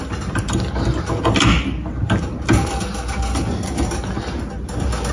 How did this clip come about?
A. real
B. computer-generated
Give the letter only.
A